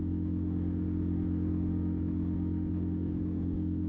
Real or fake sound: fake